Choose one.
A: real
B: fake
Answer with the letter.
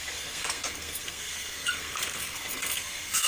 B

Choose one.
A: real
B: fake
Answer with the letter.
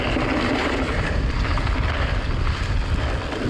A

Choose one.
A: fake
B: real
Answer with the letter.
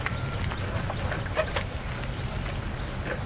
B